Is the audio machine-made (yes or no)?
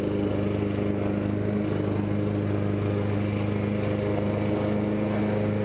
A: no